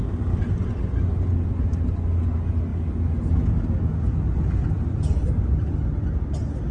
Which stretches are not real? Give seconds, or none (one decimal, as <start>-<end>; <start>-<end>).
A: none